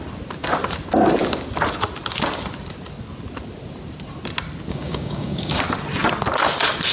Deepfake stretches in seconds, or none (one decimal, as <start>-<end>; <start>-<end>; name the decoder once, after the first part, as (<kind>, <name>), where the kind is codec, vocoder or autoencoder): 4.7-5.6 (codec, DAC)